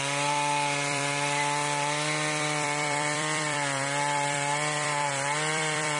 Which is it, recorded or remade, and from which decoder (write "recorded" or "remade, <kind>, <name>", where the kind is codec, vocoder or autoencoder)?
remade, vocoder, BigVGAN v2